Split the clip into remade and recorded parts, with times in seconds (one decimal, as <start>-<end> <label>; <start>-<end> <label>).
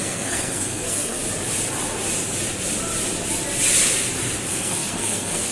0.0-1.2 remade; 1.2-4.5 recorded; 4.5-5.5 remade